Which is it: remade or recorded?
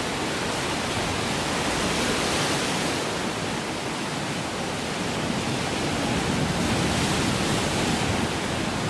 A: recorded